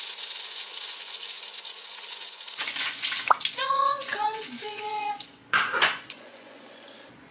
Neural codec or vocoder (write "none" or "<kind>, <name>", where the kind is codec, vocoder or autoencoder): vocoder, Vocos